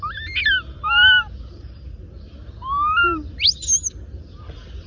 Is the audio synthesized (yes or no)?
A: no